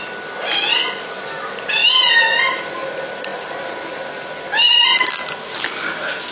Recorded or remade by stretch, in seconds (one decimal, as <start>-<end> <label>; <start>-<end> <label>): 0.0-6.3 recorded